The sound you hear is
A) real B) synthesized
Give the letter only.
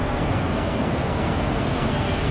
B